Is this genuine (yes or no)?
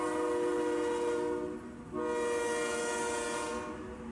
yes